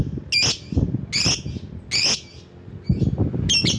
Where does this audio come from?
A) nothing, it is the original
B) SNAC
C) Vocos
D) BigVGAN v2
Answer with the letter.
A